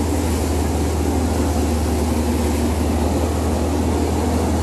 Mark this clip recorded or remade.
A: recorded